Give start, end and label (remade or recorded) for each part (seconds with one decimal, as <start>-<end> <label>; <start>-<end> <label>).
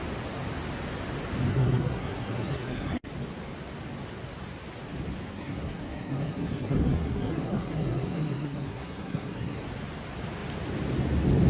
0.0-1.5 recorded; 1.5-3.1 remade; 3.1-5.3 recorded; 5.3-9.6 remade; 9.6-11.5 recorded